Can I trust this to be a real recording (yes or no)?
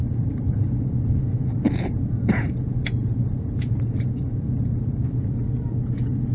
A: no